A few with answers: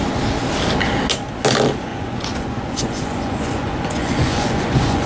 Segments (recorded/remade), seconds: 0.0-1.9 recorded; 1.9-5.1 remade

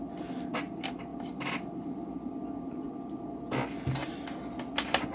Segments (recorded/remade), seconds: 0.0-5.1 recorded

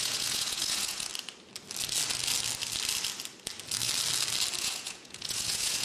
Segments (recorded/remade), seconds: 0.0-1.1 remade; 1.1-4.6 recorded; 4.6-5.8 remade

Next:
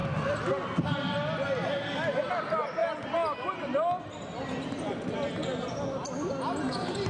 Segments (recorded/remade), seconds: 0.0-7.1 recorded

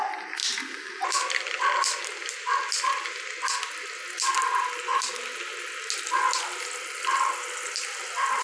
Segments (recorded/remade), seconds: 0.0-8.4 recorded

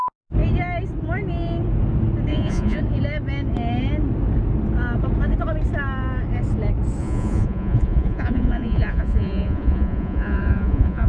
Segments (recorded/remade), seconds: 0.0-2.3 recorded; 2.3-2.8 remade; 2.8-7.0 recorded; 7.0-11.1 remade

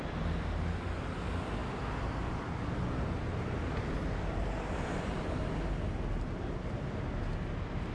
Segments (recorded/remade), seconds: 0.0-7.9 recorded